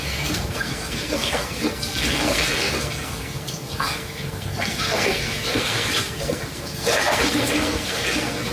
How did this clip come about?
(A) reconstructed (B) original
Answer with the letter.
A